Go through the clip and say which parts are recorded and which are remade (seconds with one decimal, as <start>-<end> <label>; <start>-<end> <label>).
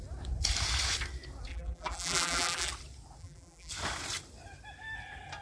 0.0-1.5 recorded; 1.5-2.7 remade; 2.7-3.2 recorded; 3.2-3.7 remade; 3.7-5.4 recorded